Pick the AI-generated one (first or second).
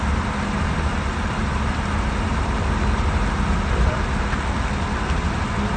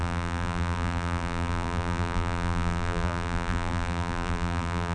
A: second